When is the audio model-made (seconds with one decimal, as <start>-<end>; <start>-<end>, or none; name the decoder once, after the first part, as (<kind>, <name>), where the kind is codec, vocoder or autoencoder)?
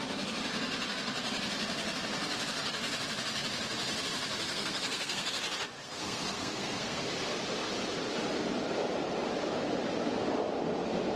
4.5-5.3 (codec, SNAC); 5.8-7.0